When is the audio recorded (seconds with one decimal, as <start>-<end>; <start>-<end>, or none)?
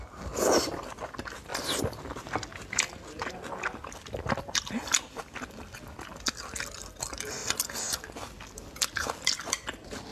0.0-10.1